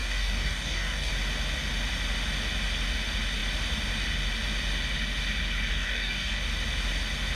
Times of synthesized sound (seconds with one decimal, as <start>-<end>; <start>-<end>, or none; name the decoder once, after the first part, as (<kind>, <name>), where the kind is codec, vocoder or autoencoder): 0.0-1.1 (codec, DAC); 5.7-6.4